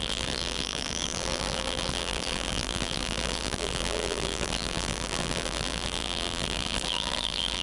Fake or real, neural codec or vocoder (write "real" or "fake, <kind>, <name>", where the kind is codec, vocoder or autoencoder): fake, vocoder, BigVGAN v2